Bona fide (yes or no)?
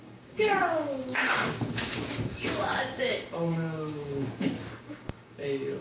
no